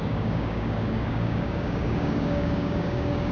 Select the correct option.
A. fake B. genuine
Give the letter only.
A